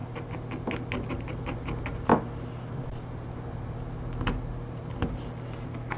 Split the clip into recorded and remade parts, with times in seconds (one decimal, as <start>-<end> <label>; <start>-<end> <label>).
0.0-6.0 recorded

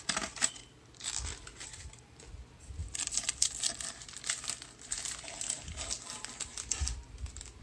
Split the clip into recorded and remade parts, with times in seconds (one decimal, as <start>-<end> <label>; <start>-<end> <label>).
0.0-7.6 recorded

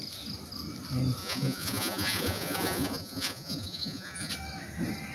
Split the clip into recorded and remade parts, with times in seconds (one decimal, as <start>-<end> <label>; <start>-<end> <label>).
0.0-1.2 recorded; 1.2-4.3 remade; 4.3-5.1 recorded

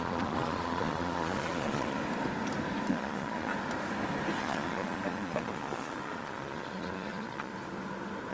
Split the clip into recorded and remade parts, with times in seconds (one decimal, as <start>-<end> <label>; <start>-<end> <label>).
0.0-2.0 remade; 2.0-2.9 recorded; 2.9-3.5 remade; 3.5-4.4 recorded; 4.4-7.5 remade; 7.5-8.3 recorded

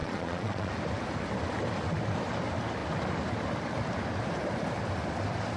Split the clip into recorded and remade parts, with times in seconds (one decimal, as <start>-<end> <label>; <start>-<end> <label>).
0.0-0.7 remade; 0.7-5.6 recorded